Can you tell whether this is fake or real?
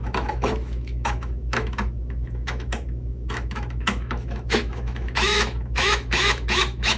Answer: fake